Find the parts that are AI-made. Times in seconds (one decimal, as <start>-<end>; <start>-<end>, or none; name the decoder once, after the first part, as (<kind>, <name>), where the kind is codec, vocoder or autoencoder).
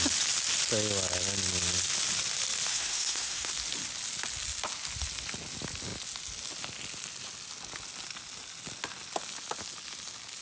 2.7-3.5 (codec, SNAC)